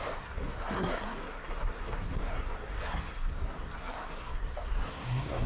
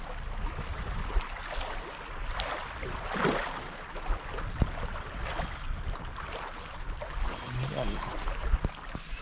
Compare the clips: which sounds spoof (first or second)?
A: first